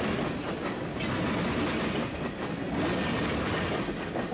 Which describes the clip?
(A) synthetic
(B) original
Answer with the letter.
B